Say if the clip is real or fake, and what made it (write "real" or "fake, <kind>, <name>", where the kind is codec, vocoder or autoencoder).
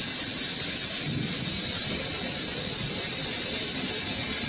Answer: real